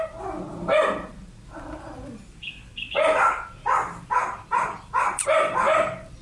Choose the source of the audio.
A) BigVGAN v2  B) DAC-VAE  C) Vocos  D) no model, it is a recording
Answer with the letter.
A